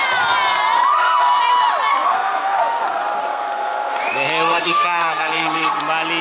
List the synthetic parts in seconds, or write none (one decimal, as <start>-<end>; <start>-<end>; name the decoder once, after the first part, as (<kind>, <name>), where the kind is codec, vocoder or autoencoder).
0.9-1.4 (codec, SNAC); 1.9-2.8; 3.3-4.0; 4.5-5.8